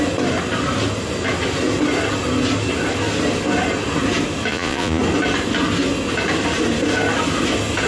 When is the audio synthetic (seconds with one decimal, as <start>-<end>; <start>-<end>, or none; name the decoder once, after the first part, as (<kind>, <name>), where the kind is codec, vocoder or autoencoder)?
4.5-5.0 (vocoder, Vocos)